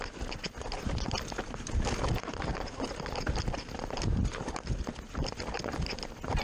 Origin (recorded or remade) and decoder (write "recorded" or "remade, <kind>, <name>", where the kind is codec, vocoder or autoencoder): recorded